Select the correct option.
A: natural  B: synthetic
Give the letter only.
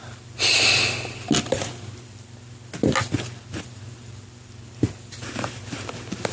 A